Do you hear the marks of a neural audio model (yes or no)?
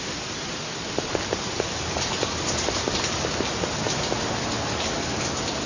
no